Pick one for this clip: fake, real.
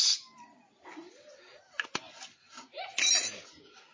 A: real